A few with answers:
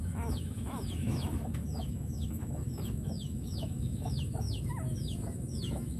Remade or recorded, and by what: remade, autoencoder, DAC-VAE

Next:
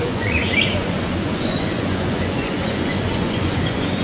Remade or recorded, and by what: remade, vocoder, Vocos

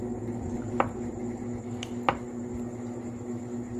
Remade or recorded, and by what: recorded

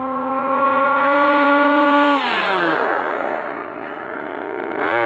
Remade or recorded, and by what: remade, vocoder, Vocos